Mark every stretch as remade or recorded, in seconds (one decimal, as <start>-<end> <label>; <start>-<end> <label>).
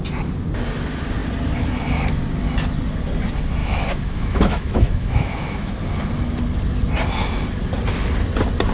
0.0-3.6 recorded; 3.6-5.7 remade; 5.7-8.7 recorded